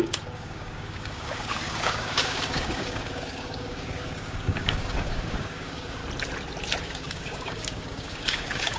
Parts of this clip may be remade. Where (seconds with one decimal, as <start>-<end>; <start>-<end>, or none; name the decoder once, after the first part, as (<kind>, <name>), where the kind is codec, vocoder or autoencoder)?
0.0-6.0 (codec, DAC); 6.8-8.8